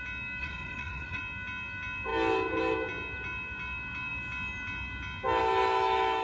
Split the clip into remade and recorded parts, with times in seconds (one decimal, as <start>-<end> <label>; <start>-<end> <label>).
0.0-0.4 recorded; 0.4-1.2 remade; 1.2-6.2 recorded